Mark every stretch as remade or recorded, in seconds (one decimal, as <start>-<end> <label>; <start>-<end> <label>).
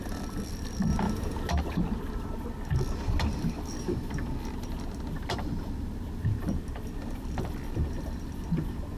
0.0-9.0 recorded